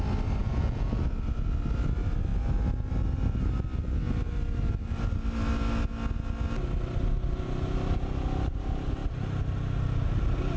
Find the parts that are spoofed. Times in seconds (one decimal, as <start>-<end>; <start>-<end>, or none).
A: 0.4-1.0